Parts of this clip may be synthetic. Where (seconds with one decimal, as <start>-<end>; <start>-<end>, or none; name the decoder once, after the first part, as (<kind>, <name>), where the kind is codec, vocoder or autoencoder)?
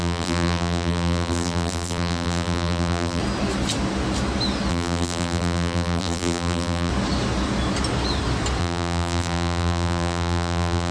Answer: 0.0-3.2 (vocoder, BigVGAN v2); 4.7-6.9; 8.6-10.9